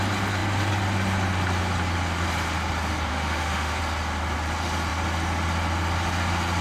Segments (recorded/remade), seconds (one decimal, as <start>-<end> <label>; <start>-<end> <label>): 0.0-3.1 recorded; 3.1-3.8 remade; 3.8-6.6 recorded